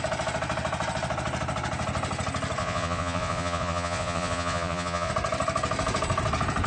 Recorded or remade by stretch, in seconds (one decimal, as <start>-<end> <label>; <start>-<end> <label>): 0.0-2.6 recorded; 2.6-5.1 remade; 5.1-6.7 recorded